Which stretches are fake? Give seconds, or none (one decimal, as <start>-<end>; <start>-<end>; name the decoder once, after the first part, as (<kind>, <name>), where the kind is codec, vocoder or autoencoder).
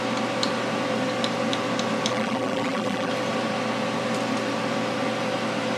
2.1-3.1 (vocoder, BigVGAN v2)